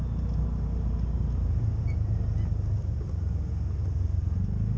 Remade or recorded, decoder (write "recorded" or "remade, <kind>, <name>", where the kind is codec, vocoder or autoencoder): recorded